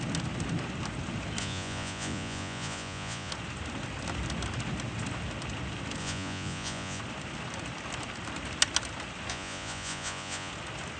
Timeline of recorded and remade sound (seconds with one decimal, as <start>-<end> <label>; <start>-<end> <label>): 0.0-1.4 recorded; 1.4-3.3 remade; 3.3-6.0 recorded; 6.0-7.0 remade; 7.0-9.3 recorded; 9.3-10.5 remade; 10.5-11.0 recorded